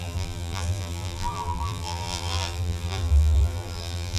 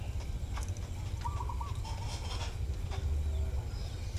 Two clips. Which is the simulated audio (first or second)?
first